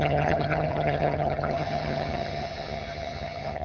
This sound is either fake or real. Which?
fake